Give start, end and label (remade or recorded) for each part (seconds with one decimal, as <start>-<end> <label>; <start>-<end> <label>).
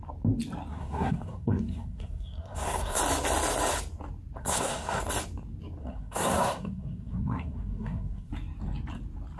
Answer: 0.0-0.7 recorded; 0.7-3.0 remade; 3.0-4.4 recorded; 4.4-5.0 remade; 5.0-5.8 recorded; 5.8-8.3 remade; 8.3-9.4 recorded